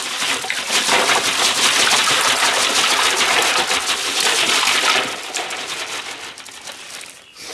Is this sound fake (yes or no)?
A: no